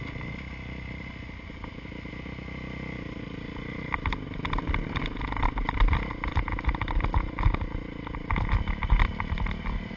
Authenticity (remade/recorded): recorded